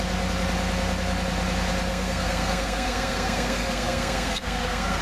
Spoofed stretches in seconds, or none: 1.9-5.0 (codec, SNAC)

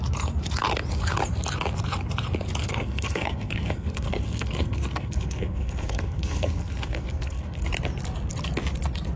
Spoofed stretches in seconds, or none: 2.6-7.7 (codec, SNAC)